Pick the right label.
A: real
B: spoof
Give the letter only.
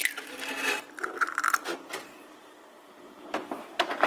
A